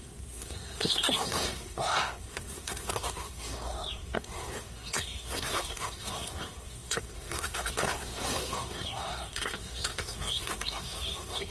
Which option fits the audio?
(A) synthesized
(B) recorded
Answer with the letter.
A